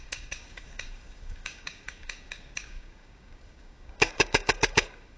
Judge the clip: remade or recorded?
remade